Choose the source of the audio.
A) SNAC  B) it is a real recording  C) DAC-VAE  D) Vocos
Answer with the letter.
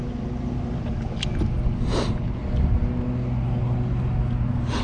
B